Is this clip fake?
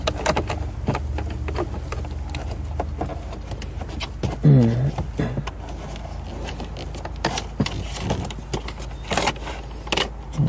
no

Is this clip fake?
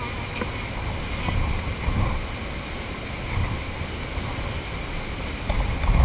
no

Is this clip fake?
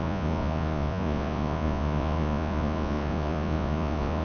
yes